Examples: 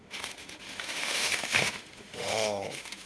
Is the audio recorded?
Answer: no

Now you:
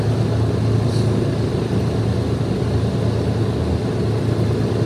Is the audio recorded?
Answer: yes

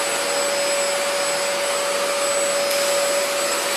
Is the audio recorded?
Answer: yes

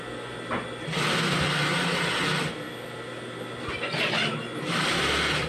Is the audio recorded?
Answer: yes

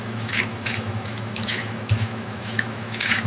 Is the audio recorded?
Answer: no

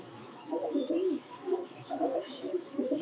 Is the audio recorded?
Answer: no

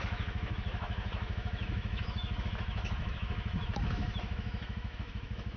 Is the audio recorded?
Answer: no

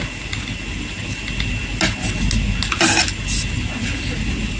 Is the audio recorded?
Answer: yes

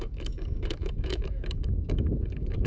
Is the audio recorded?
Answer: no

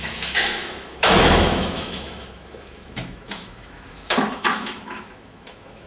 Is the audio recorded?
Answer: no